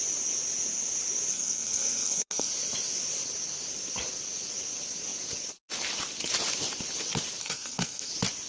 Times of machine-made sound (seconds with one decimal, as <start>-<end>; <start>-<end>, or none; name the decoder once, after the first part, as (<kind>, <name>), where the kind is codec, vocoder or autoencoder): 1.3-2.5 (codec, SNAC); 7.4-8.1